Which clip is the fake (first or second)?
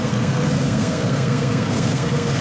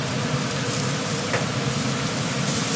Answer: first